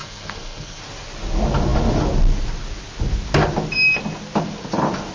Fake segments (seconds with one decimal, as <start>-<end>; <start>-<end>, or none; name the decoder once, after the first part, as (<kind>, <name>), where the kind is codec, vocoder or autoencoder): 0.0-0.8 (codec, SNAC)